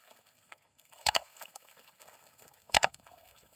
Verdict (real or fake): fake